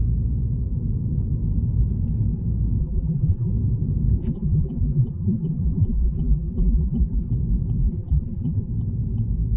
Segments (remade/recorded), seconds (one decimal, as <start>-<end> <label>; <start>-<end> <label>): 0.0-2.8 recorded; 2.8-3.5 remade; 3.5-4.2 recorded; 4.2-7.3 remade; 7.3-7.8 recorded; 7.8-8.7 remade; 8.7-9.6 recorded

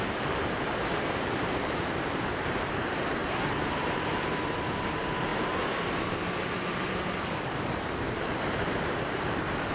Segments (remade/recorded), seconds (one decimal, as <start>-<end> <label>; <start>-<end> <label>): 0.0-9.7 remade

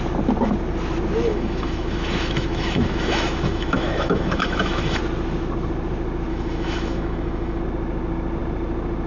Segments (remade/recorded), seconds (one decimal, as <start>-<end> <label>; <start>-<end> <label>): 0.0-1.3 recorded; 1.3-5.0 remade; 5.0-6.3 recorded; 6.3-7.6 remade; 7.6-9.1 recorded

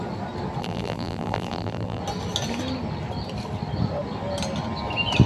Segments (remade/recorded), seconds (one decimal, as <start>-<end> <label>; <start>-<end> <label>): 0.0-0.6 recorded; 0.6-2.0 remade; 2.0-5.3 recorded

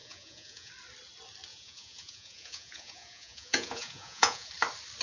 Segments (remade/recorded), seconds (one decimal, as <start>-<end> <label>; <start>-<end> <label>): 0.0-0.7 remade; 0.7-1.5 recorded; 1.5-4.5 remade; 4.5-5.0 recorded

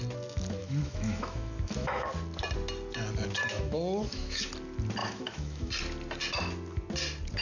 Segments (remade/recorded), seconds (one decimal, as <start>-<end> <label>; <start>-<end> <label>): 0.0-0.6 recorded; 0.6-2.1 remade; 2.1-3.4 recorded; 3.4-4.5 remade; 4.5-5.0 recorded; 5.0-5.7 remade; 5.7-7.4 recorded

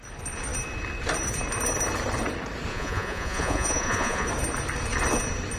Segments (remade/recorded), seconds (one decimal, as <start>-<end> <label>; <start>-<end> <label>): 0.0-2.7 recorded; 2.7-4.3 remade; 4.3-5.6 recorded